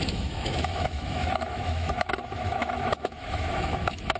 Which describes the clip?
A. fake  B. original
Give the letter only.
A